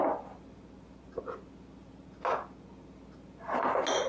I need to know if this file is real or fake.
real